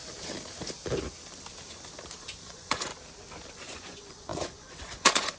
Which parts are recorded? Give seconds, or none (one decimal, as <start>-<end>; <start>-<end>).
0.0-2.2; 2.9-3.5